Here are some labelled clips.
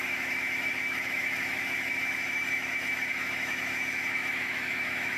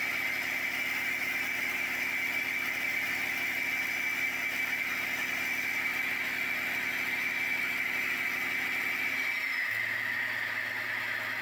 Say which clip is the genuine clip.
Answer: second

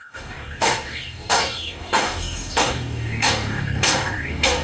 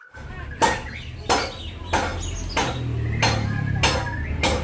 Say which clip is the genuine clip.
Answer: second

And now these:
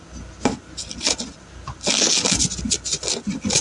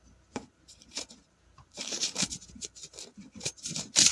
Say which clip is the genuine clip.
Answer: first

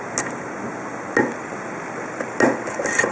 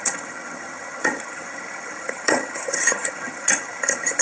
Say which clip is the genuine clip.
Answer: first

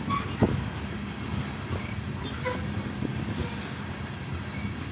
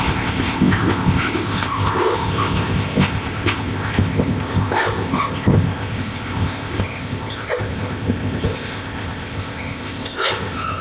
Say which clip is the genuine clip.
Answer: first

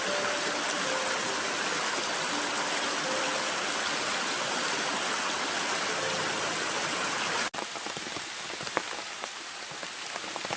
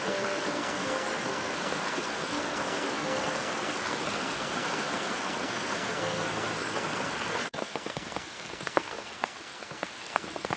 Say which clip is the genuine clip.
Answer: first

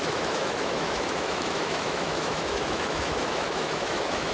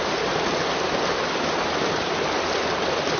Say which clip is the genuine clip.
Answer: second